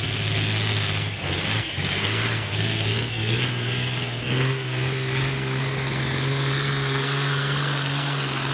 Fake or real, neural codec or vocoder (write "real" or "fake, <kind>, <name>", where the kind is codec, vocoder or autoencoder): fake, codec, SNAC